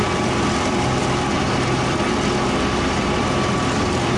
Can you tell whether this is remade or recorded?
remade